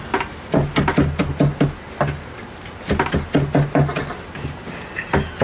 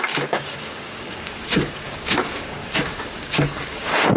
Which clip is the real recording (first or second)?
first